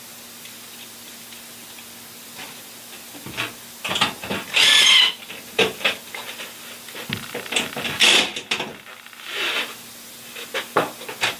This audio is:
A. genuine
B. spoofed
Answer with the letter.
A